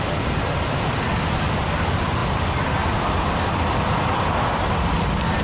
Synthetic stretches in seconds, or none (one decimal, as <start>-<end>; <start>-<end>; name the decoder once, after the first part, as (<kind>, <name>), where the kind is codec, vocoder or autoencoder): none